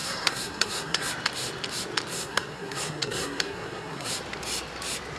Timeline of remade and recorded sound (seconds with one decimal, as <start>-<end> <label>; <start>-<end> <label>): 0.0-1.1 remade; 1.1-2.1 recorded; 2.1-4.1 remade; 4.1-5.2 recorded